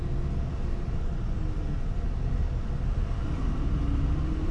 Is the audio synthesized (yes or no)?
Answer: no